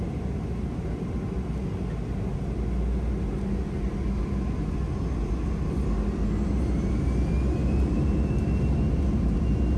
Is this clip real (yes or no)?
yes